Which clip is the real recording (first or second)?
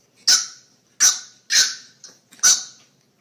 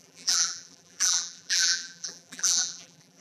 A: first